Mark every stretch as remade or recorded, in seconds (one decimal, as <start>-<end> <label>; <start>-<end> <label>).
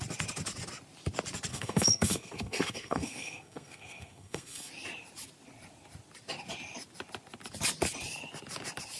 0.0-1.5 recorded; 1.5-4.7 remade; 4.7-9.0 recorded